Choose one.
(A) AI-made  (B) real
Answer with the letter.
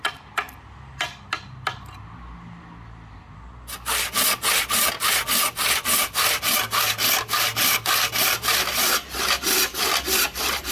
B